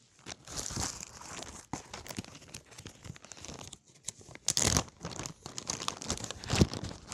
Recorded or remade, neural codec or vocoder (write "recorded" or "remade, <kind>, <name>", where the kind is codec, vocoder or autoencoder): recorded